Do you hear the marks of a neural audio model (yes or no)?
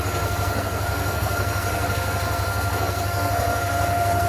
yes